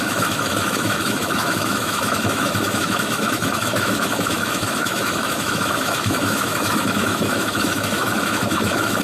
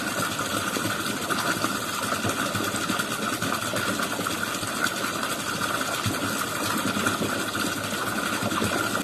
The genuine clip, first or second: second